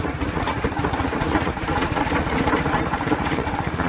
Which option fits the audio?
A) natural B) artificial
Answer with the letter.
B